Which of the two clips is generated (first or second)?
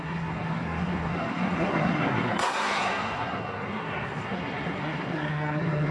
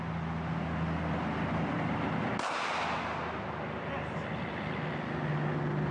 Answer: first